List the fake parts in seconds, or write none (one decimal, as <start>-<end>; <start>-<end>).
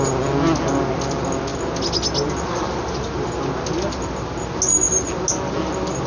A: none